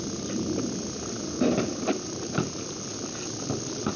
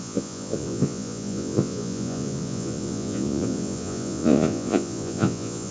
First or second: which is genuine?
first